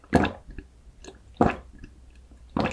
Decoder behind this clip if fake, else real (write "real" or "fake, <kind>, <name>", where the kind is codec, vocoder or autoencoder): real